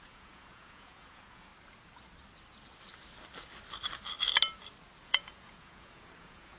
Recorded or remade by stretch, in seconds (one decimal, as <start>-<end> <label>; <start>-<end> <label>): 0.0-1.5 remade; 1.5-5.0 recorded; 5.0-6.6 remade